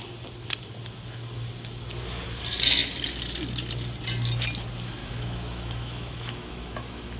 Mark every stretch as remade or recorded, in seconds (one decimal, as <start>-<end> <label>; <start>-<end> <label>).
0.0-5.0 recorded; 5.0-7.2 remade